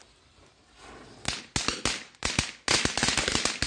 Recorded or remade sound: recorded